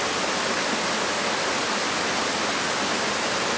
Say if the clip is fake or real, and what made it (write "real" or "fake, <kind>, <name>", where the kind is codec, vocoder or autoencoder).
real